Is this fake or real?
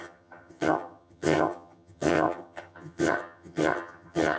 fake